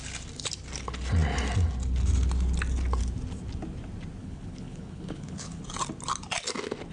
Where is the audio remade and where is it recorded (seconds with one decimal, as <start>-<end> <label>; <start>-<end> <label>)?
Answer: 0.0-4.2 recorded; 4.2-5.6 remade; 5.6-6.9 recorded